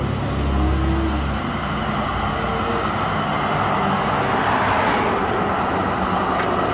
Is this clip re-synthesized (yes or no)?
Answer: no